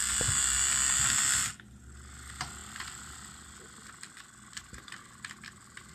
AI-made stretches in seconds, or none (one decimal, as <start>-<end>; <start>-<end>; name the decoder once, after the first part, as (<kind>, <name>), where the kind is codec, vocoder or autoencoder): none